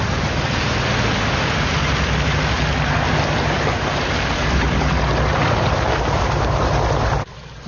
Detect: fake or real real